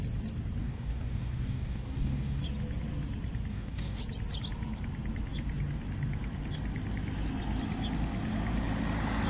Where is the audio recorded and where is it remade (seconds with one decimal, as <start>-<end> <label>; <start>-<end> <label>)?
0.0-0.6 recorded; 0.6-2.4 remade; 2.4-3.5 recorded; 3.5-4.0 remade; 4.0-9.3 recorded